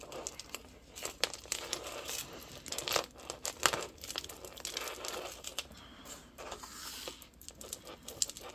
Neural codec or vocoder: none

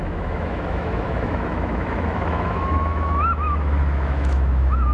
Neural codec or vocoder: autoencoder, DAC-VAE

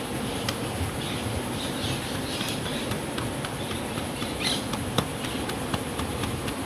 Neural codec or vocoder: none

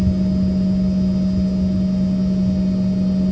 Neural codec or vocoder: none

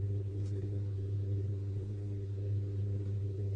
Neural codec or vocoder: codec, SNAC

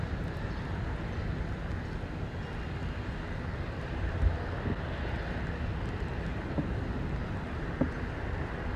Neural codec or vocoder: none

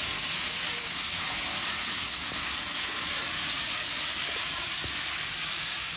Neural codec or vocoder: codec, DAC